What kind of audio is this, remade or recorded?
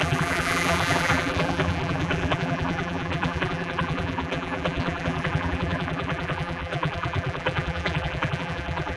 remade